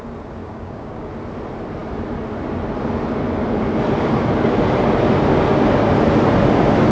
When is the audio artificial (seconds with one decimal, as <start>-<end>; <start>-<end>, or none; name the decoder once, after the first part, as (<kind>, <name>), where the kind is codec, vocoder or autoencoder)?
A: 0.4-1.1 (codec, DAC)